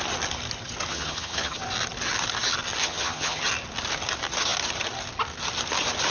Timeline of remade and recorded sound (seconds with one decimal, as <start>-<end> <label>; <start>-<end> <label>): 0.0-0.9 recorded; 0.9-1.6 remade; 1.6-2.8 recorded; 2.8-3.4 remade; 3.4-6.1 recorded